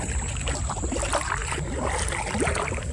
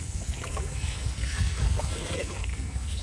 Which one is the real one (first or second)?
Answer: first